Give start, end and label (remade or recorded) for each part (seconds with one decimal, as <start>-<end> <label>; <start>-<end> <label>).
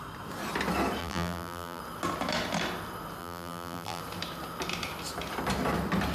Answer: 0.0-1.0 recorded; 1.0-1.8 remade; 1.8-3.2 recorded; 3.2-4.0 remade; 4.0-6.1 recorded